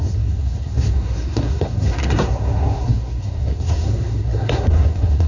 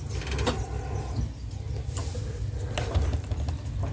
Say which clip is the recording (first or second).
second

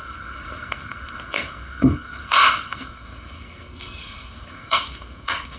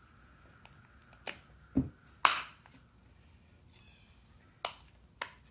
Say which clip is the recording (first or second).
second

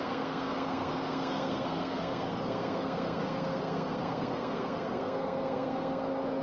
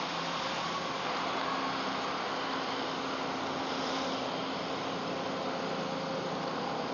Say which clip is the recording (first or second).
second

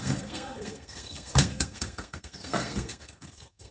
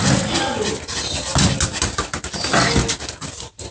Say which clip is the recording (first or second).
second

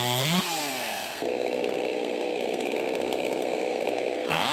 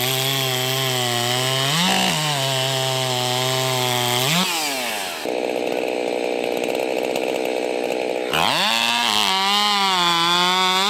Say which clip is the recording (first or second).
second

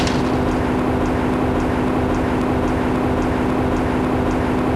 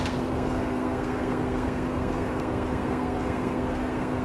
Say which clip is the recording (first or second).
first